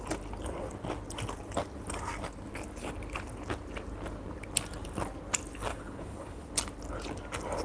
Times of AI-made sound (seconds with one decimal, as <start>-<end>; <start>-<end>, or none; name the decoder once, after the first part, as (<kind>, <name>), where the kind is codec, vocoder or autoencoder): 5.7-6.5 (codec, HILCodec)